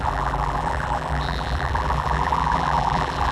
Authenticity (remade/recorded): remade